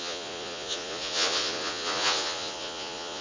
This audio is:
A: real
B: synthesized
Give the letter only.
B